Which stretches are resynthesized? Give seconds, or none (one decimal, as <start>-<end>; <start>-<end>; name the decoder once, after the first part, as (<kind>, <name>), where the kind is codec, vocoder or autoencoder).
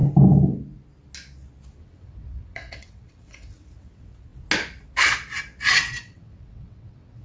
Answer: 1.8-4.3 (vocoder, WaveNeXt); 5.7-7.2